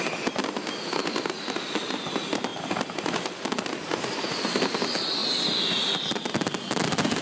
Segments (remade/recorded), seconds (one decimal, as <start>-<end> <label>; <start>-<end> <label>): 0.0-7.2 recorded